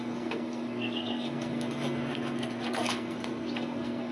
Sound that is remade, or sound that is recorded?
remade